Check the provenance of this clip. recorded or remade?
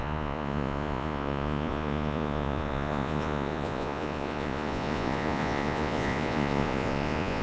remade